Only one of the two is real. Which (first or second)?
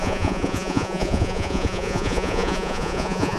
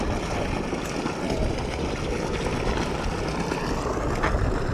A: second